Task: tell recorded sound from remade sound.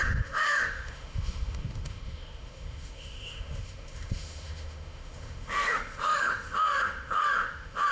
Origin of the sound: remade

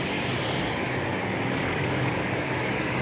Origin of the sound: remade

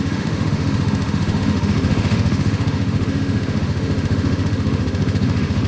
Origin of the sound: remade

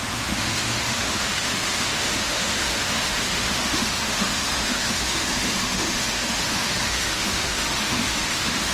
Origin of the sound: remade